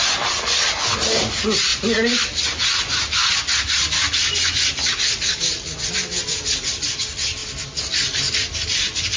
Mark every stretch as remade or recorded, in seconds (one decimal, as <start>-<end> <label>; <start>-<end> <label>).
0.0-9.2 recorded